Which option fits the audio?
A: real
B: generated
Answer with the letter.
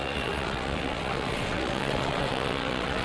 B